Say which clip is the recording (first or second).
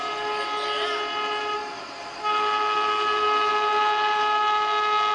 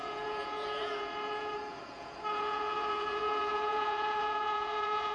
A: first